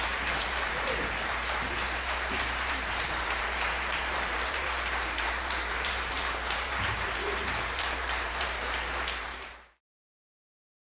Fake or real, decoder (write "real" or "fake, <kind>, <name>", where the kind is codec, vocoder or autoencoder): fake, vocoder, BigVGAN v2